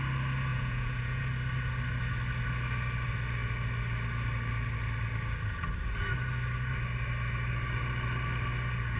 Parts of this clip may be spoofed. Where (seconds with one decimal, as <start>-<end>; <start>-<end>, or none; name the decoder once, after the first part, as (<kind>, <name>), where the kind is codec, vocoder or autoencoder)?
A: 0.5-1.2 (vocoder, Vocos)